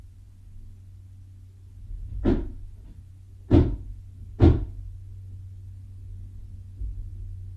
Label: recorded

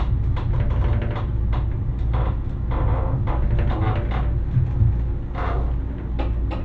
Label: recorded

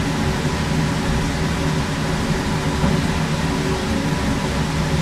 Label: recorded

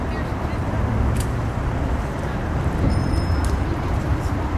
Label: remade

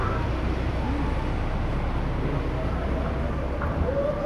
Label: recorded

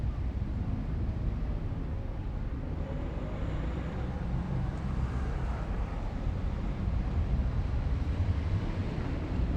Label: remade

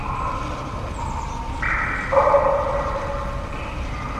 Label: recorded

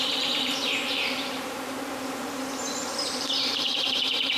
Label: remade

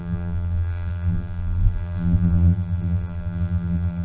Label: remade